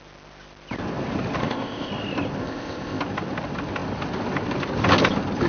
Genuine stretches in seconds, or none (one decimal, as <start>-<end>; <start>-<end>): 0.0-1.4; 1.9-2.4; 3.0-5.5

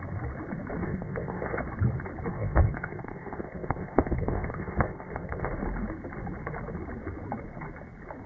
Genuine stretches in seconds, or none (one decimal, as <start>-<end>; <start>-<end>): 0.0-0.8; 1.6-2.3; 5.5-8.3

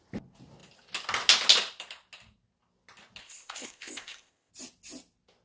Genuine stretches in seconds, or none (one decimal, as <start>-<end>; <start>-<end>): 0.0-3.2; 4.5-5.4

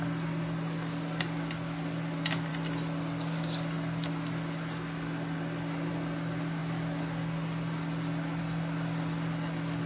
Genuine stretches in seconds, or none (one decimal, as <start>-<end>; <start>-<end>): 0.0-9.9

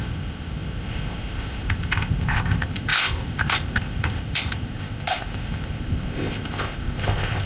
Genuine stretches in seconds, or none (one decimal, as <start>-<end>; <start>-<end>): none